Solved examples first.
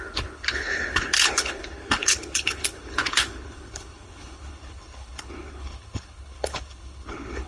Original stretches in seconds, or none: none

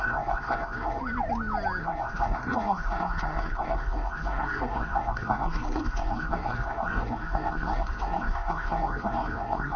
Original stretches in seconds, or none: 1.0-1.8